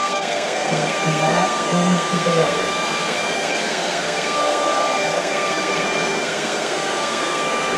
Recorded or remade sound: remade